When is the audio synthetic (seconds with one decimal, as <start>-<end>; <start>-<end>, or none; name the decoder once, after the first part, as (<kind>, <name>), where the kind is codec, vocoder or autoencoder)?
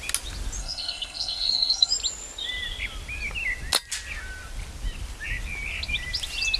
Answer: 0.6-1.9 (codec, SNAC)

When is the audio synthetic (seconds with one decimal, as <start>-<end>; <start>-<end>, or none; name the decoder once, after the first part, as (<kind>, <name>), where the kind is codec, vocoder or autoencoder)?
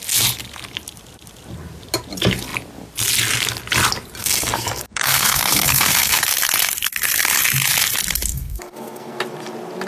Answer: 4.2-6.2 (codec, SNAC); 8.3-9.2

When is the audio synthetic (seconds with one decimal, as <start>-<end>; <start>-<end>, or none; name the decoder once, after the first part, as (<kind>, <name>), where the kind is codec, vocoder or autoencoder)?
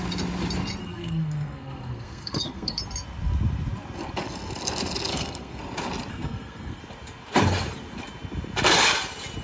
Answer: 0.8-2.8 (codec, SNAC); 5.1-5.6; 6.1-6.8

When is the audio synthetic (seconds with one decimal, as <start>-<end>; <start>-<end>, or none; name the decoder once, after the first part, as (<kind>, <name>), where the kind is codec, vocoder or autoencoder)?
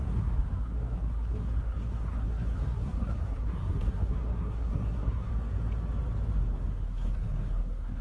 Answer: 0.0-5.3 (codec, SNAC); 6.7-8.0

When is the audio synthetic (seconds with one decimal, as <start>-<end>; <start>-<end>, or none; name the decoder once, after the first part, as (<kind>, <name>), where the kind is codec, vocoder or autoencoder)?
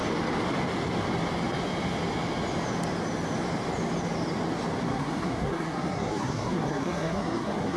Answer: 4.9-7.8 (codec, SNAC)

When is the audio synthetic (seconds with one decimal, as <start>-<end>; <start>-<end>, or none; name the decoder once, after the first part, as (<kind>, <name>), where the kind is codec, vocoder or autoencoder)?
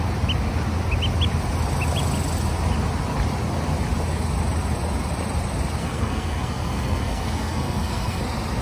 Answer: 5.8-8.2 (codec, SNAC)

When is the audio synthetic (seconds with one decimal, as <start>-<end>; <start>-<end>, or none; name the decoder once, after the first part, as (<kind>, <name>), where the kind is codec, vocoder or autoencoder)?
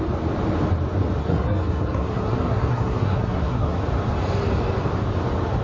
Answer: 1.2-3.8 (codec, SNAC)